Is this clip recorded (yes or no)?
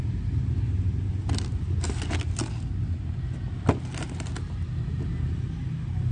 yes